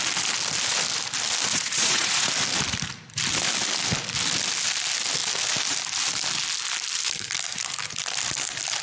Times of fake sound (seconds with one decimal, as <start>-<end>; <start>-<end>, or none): 1.5-2.3